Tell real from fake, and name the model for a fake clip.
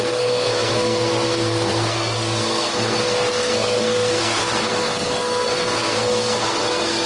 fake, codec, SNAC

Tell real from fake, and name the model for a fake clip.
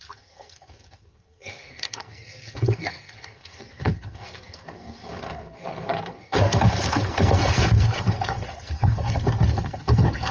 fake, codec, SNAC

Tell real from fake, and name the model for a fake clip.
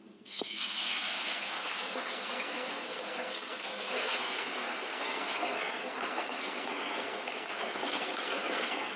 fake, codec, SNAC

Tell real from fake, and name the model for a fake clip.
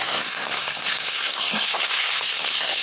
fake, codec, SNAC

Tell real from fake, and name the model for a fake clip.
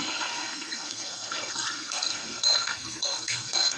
fake, codec, SNAC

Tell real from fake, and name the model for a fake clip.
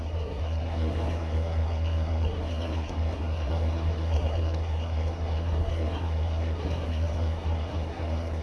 fake, codec, SNAC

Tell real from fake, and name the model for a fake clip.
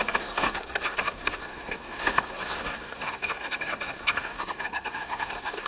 fake, codec, SNAC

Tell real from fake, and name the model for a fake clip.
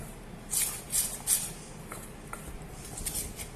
real